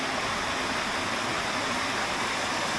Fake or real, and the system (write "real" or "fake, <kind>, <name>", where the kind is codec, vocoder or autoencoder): real